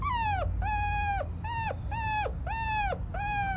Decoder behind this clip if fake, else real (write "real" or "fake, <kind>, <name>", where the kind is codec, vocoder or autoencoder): real